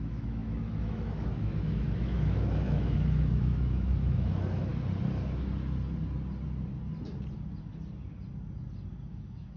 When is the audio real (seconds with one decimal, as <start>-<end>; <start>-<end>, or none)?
4.7-9.1